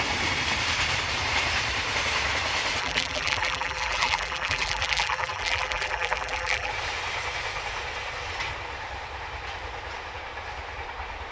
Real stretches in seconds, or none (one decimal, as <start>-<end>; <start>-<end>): 0.0-2.8; 6.7-11.3